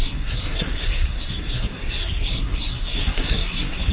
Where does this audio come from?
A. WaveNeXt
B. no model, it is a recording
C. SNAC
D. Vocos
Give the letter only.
C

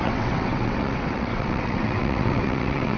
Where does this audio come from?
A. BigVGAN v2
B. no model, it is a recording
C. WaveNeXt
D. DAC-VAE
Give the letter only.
C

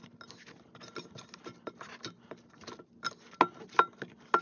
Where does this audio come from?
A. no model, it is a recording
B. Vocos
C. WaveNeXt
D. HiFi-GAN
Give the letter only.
A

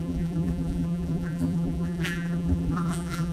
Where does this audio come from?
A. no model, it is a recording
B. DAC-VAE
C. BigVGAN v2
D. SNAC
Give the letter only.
C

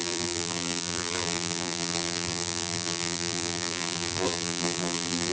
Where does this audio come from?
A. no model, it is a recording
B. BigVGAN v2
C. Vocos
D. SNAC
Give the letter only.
B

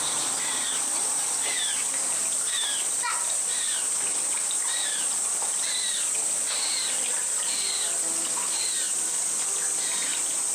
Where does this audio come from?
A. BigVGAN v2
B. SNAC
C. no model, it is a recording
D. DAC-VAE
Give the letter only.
C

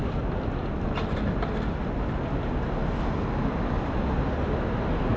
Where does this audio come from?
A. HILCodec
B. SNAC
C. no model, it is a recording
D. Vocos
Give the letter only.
C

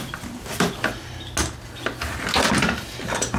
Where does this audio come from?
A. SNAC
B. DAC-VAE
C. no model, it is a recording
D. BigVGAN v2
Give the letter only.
C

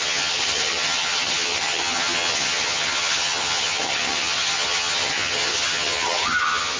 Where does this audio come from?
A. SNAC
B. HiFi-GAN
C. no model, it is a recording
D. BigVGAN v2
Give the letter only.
B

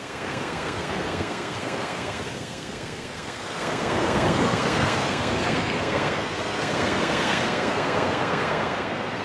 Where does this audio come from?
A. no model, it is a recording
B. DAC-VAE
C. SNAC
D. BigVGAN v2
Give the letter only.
C